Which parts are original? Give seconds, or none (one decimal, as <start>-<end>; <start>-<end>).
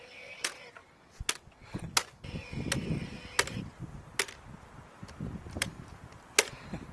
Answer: 0.8-4.9